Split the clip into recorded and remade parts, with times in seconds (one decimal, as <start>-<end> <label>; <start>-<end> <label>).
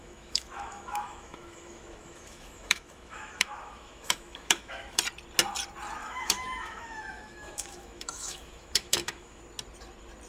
0.0-5.0 remade; 5.0-6.0 recorded; 6.0-9.4 remade; 9.4-10.3 recorded